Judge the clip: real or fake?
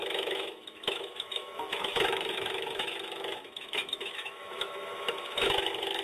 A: fake